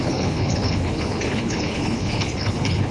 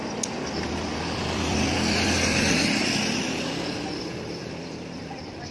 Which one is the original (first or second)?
second